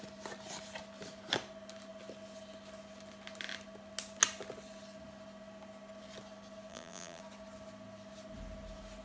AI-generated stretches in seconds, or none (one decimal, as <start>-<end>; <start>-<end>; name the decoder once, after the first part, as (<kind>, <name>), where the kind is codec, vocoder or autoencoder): 6.7-7.2 (vocoder, BigVGAN v2)